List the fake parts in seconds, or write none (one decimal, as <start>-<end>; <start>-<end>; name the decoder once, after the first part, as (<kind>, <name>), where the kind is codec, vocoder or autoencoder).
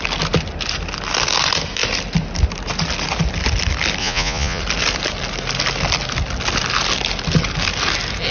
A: 4.0-4.6 (vocoder, Vocos)